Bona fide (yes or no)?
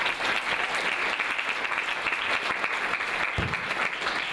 yes